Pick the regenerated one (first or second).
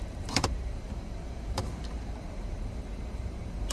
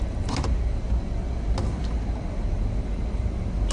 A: first